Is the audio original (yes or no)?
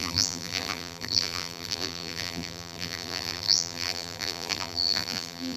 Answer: no